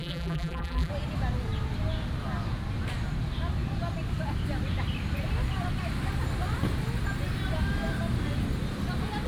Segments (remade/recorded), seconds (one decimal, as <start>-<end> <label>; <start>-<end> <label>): 0.0-0.9 remade; 0.9-9.3 recorded